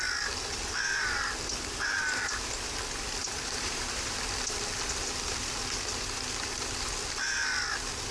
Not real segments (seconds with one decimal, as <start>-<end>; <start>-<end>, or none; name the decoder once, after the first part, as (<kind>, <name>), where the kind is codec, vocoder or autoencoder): 3.2-4.2 (vocoder, BigVGAN v2)